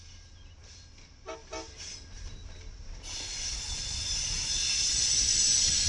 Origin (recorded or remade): recorded